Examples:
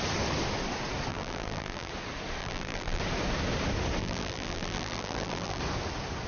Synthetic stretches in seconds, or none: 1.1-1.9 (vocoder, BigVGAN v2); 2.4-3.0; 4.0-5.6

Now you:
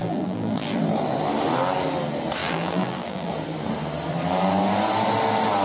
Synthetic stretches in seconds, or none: 0.0-0.8 (vocoder, BigVGAN v2); 2.4-3.3

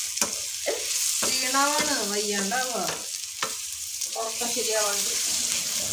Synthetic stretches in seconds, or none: 3.5-5.4 (vocoder, BigVGAN v2)

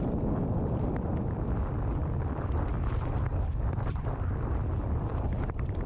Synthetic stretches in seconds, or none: 0.0-5.9 (vocoder, BigVGAN v2)

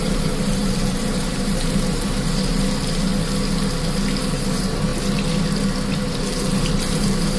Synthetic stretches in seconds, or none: 0.0-3.1 (vocoder, BigVGAN v2); 4.2-4.9; 5.9-7.4

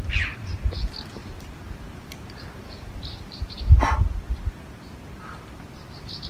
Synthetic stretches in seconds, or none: 1.2-3.8 (vocoder, BigVGAN v2)